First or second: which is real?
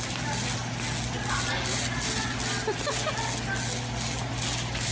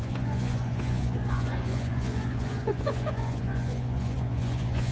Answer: first